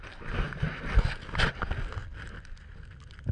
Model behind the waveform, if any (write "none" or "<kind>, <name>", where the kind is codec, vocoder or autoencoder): none